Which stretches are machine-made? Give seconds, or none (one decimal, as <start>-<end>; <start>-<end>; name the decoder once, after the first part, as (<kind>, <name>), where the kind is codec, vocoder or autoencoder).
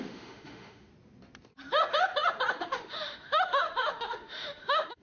0.0-0.9 (autoencoder, DAC-VAE); 2.5-5.0